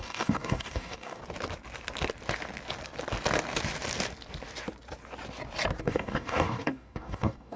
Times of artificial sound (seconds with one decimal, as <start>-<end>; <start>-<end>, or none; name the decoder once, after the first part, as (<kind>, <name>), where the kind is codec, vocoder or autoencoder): 0.0-1.2 (codec, DAC); 5.8-7.6